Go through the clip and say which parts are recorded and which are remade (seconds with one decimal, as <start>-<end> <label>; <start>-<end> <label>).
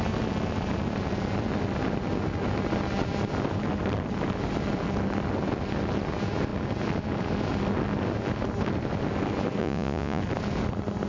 0.0-9.6 recorded; 9.6-10.2 remade; 10.2-11.1 recorded